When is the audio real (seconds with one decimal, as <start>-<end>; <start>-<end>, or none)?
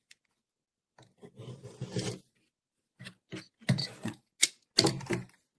0.0-3.8; 4.3-5.6